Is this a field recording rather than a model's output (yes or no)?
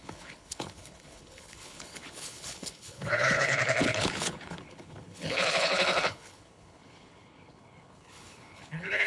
no